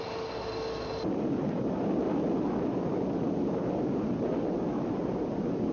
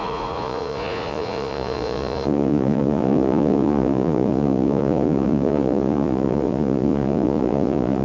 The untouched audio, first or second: first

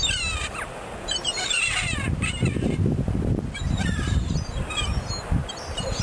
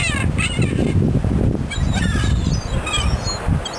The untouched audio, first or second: second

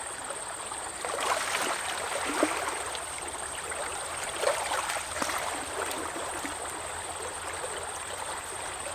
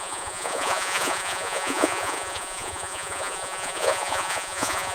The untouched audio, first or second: first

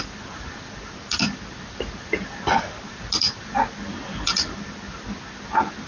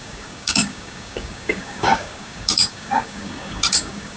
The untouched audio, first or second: first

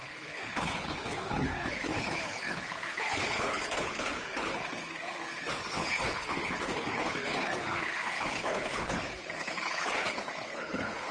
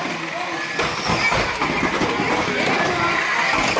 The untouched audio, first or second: second